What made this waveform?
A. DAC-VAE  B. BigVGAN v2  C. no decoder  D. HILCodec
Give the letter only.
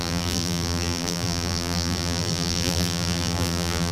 B